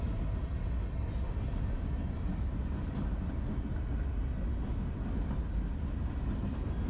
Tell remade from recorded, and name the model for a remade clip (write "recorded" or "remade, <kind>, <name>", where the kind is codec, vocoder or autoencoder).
recorded